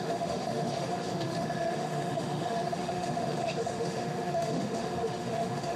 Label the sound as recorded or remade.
remade